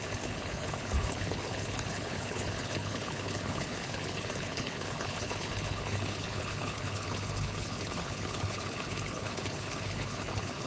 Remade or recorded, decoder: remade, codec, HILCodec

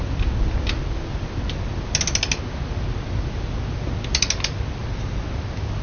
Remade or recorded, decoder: recorded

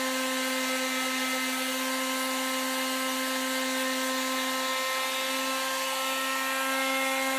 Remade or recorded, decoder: recorded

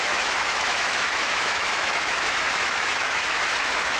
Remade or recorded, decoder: remade, autoencoder, DAC-VAE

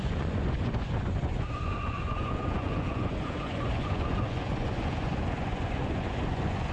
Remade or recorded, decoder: remade, vocoder, Vocos